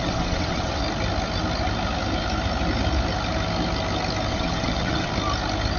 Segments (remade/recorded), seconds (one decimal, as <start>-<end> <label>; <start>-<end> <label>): 0.0-0.8 remade; 0.8-4.3 recorded; 4.3-5.1 remade; 5.1-5.8 recorded